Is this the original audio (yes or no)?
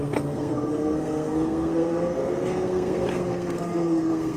no